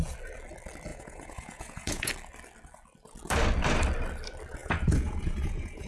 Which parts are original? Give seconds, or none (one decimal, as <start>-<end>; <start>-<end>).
0.0-0.9; 2.1-4.6